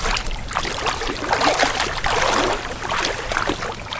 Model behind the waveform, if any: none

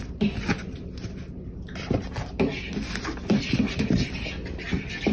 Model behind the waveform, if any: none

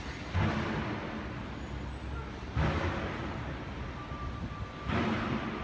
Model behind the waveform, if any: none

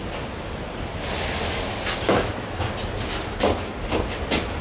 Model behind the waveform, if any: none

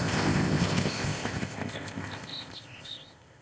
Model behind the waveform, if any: codec, ZipCodec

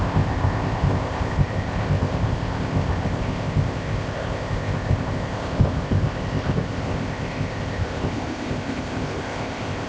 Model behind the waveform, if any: codec, ZipCodec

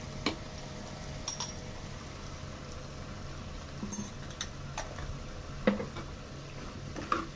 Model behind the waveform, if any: none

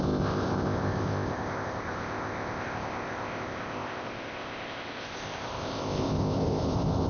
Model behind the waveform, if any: codec, ZipCodec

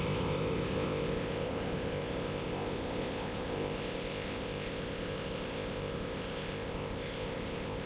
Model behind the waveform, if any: codec, ZipCodec